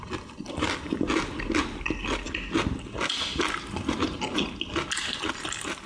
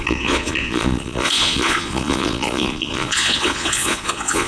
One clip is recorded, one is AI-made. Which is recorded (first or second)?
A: first